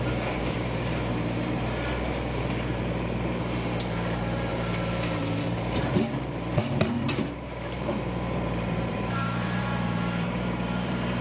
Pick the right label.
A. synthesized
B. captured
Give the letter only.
A